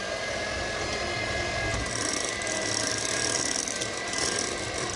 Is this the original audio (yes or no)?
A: yes